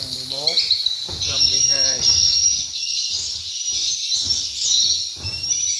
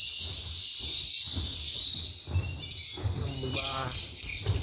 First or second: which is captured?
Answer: second